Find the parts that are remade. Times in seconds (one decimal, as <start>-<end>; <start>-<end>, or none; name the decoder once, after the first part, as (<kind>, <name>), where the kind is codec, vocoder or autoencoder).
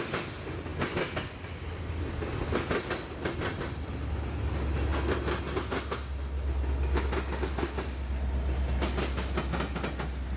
none